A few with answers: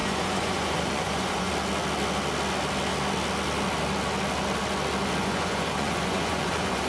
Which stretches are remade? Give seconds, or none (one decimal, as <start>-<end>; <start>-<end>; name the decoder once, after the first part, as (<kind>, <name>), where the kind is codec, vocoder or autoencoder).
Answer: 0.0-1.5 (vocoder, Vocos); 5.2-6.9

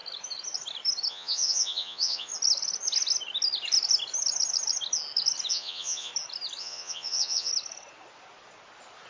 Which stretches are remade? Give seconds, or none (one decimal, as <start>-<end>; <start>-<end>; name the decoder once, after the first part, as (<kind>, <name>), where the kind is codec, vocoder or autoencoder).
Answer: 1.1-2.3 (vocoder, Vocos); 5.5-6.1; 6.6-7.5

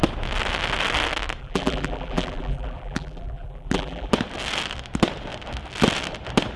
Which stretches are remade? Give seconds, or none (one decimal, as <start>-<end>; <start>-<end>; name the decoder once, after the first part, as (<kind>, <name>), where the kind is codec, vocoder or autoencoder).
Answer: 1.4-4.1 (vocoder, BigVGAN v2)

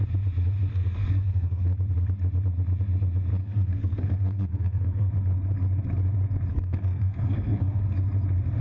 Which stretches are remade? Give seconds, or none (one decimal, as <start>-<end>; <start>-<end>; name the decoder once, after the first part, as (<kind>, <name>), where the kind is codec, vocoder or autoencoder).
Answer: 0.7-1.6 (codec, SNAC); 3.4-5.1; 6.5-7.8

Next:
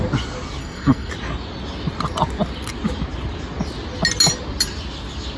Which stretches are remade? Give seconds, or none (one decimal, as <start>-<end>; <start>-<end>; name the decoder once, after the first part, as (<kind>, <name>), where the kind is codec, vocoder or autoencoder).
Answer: 0.6-1.1 (codec, SNAC)

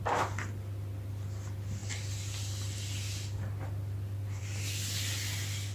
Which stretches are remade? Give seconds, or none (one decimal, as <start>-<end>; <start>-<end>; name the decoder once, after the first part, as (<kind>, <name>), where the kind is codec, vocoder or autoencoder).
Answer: none